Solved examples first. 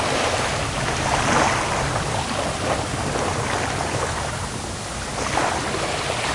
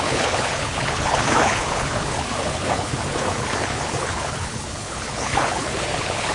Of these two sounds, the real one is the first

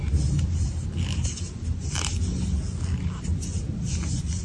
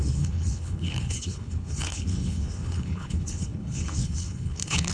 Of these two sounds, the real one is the first